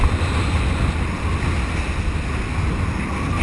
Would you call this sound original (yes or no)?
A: yes